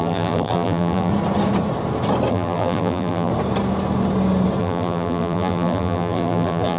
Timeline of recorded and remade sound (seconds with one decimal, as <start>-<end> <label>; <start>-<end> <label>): 0.0-1.1 remade; 1.1-2.3 recorded; 2.3-3.3 remade; 3.3-4.6 recorded; 4.6-6.8 remade